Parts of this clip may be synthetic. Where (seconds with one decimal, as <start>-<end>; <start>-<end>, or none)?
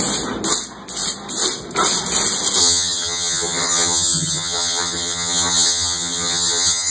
2.6-6.9